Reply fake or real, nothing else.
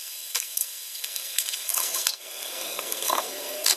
fake